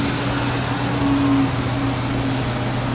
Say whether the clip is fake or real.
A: real